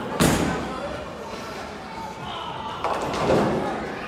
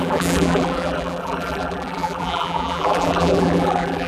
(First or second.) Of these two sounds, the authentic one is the first